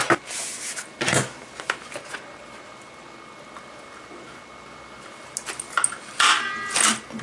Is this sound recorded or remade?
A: recorded